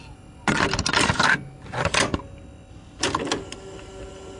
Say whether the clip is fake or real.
real